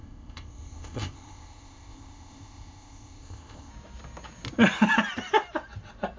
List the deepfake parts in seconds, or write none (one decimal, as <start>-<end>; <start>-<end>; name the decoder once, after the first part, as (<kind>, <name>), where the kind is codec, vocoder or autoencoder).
0.0-3.7 (codec, ZipCodec)